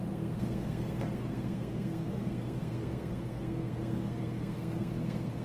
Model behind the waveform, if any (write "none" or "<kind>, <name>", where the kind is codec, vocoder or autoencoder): codec, SNAC